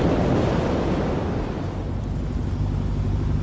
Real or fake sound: real